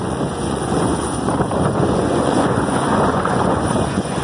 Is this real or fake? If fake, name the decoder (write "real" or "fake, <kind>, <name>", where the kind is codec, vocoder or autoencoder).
fake, vocoder, Vocos